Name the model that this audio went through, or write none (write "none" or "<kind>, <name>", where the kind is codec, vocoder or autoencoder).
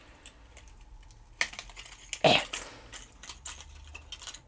none